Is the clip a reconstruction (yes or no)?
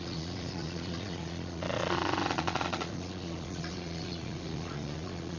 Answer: yes